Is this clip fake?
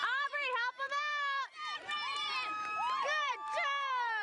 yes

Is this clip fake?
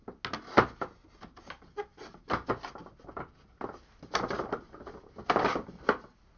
no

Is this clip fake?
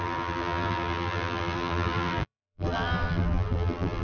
yes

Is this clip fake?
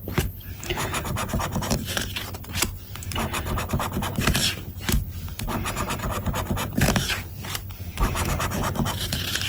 yes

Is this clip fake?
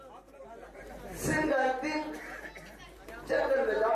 yes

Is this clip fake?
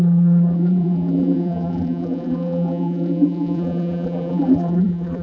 yes